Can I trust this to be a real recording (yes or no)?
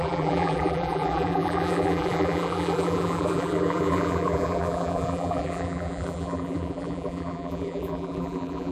no